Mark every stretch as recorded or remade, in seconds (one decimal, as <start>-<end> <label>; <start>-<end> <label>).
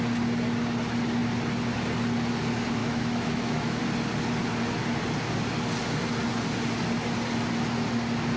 0.0-2.8 recorded; 2.8-3.8 remade; 3.8-8.4 recorded